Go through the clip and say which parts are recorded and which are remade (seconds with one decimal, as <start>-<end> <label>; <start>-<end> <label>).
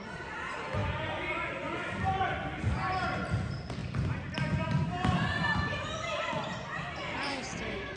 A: 0.0-0.8 remade; 0.8-1.3 recorded; 1.3-3.8 remade; 3.8-5.7 recorded; 5.7-8.0 remade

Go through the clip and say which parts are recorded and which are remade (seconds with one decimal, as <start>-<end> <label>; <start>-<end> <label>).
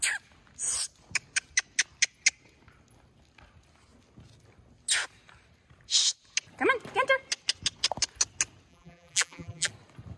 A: 0.0-8.7 recorded; 8.7-9.7 remade; 9.7-10.2 recorded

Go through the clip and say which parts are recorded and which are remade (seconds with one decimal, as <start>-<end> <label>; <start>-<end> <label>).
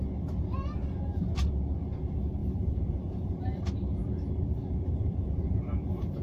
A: 0.0-2.4 recorded; 2.4-3.7 remade; 3.7-4.6 recorded; 4.6-6.2 remade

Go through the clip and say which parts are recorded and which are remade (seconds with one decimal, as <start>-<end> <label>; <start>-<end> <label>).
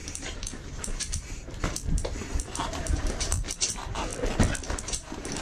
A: 0.0-4.1 remade; 4.1-4.8 recorded; 4.8-5.4 remade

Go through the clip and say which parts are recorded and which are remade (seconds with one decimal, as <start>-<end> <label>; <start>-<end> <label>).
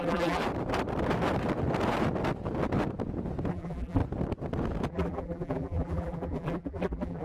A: 0.0-0.4 remade; 0.4-3.5 recorded; 3.5-4.0 remade; 4.0-4.9 recorded; 4.9-7.2 remade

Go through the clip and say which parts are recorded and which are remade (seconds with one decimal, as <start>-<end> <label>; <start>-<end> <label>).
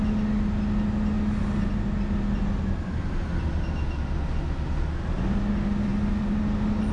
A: 0.0-6.9 recorded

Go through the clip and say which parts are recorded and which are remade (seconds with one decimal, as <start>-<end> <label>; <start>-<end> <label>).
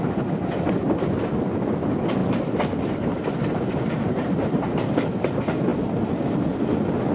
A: 0.0-2.2 recorded; 2.2-5.3 remade; 5.3-7.1 recorded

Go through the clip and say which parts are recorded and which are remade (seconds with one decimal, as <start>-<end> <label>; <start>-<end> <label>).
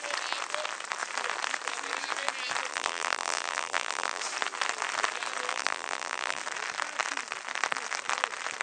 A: 0.0-2.7 recorded; 2.7-4.2 remade; 4.2-5.5 recorded; 5.5-6.4 remade; 6.4-8.6 recorded